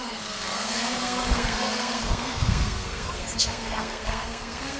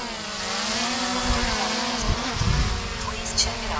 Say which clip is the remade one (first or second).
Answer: first